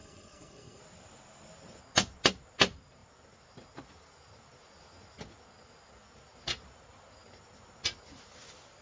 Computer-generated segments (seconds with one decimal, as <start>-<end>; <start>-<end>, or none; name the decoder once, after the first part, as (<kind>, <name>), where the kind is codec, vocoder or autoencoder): 0.0-0.8 (codec, SNAC)